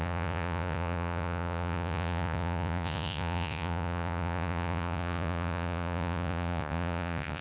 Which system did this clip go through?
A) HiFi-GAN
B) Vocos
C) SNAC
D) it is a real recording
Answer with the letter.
B